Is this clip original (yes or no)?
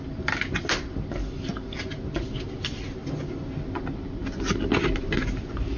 yes